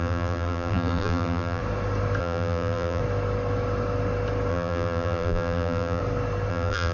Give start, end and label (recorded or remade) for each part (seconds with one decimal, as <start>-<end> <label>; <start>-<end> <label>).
0.0-1.6 remade; 1.6-2.2 recorded; 2.2-3.0 remade; 3.0-4.5 recorded; 4.5-6.0 remade; 6.0-6.5 recorded; 6.5-6.9 remade